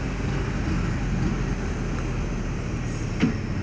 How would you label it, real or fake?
real